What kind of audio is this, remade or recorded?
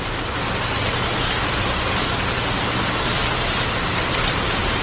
recorded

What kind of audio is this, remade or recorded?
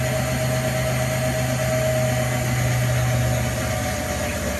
recorded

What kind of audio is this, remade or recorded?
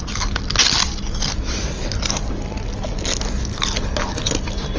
recorded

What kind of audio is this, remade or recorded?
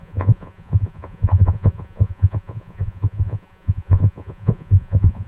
remade